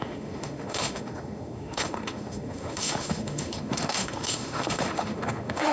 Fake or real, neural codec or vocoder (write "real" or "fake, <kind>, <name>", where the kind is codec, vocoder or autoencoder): fake, autoencoder, DAC-VAE